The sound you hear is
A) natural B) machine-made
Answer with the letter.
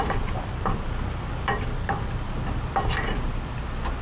B